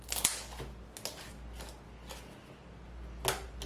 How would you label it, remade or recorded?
recorded